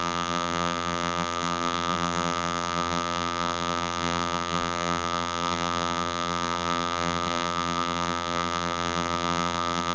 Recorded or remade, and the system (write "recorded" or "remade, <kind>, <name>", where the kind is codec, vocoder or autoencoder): remade, vocoder, BigVGAN v2